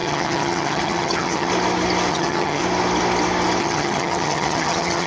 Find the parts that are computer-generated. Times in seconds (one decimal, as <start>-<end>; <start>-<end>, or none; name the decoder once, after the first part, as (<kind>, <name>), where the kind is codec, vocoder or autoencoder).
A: 0.0-1.5 (vocoder, HiFi-GAN); 2.1-2.6; 3.6-5.1